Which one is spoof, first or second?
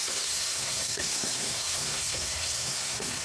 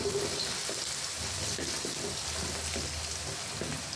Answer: first